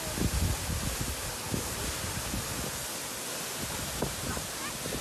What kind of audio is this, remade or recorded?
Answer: recorded